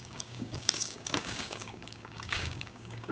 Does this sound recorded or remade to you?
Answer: remade